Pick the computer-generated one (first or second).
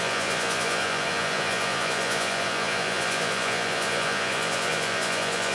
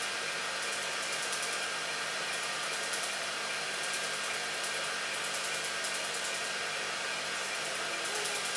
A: first